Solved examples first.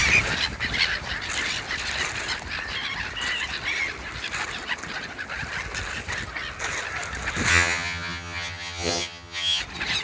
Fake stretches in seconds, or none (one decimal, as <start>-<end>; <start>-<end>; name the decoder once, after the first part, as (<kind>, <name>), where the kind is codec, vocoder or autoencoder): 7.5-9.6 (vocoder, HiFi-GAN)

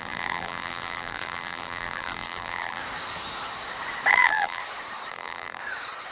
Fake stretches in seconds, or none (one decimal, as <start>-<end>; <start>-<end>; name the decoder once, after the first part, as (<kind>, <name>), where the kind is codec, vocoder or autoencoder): 0.0-2.8 (vocoder, BigVGAN v2); 4.1-4.6; 5.1-5.6

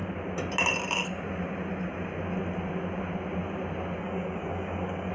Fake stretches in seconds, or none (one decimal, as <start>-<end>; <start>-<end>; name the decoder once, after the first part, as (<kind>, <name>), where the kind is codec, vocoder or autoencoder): 4.0-5.1 (codec, DAC)

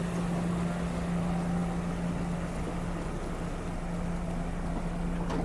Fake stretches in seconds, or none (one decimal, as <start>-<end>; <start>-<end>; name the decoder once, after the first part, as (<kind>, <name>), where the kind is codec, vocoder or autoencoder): none

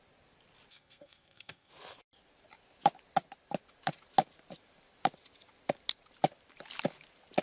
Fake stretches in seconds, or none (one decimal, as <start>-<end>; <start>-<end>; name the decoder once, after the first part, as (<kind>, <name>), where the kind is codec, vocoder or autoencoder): 0.7-1.7 (codec, SNAC)